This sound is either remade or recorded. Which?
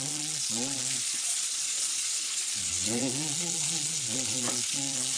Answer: remade